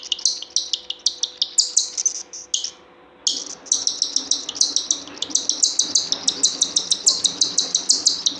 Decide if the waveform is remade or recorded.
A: recorded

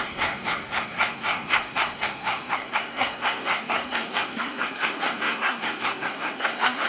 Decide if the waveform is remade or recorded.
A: remade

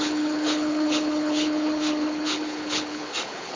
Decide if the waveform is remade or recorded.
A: remade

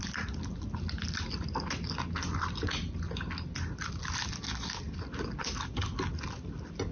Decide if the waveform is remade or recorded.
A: recorded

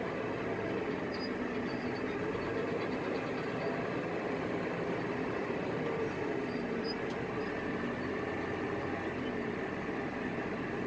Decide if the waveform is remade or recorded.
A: recorded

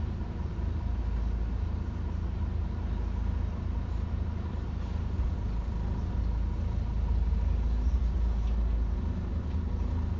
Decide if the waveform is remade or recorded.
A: recorded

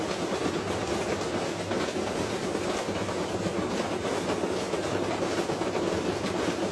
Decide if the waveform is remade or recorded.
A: recorded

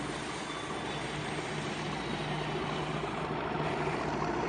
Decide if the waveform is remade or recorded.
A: recorded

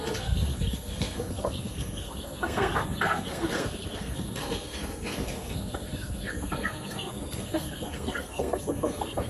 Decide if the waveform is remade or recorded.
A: remade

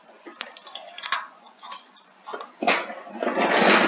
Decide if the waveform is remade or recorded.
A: remade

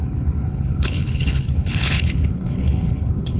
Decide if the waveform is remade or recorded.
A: remade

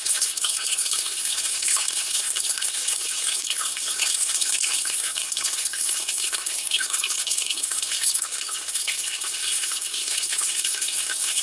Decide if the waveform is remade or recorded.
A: remade